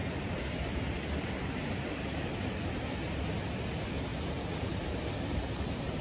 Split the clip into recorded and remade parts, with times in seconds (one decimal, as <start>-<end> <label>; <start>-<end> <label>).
0.0-6.0 recorded